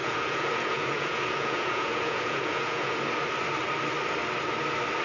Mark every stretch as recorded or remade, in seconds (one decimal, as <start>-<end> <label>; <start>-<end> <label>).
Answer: 0.0-3.0 remade; 3.0-5.0 recorded